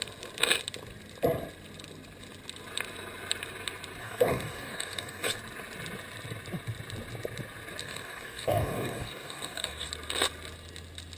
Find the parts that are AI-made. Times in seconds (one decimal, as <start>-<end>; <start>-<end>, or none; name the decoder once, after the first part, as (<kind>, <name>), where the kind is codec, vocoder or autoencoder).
4.0-5.4 (codec, DAC); 7.8-9.9